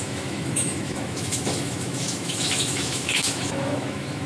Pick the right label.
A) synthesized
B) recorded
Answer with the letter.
A